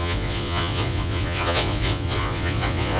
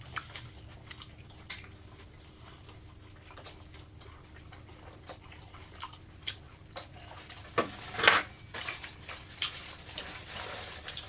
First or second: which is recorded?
second